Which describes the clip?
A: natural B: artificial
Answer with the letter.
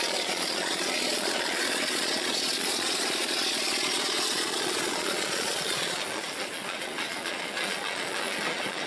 B